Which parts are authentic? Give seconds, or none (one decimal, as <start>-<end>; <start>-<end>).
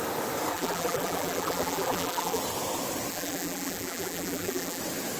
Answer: 0.0-0.5; 2.4-3.1; 4.8-5.2